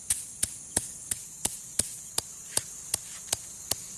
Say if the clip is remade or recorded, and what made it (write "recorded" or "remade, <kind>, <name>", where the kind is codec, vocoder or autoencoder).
recorded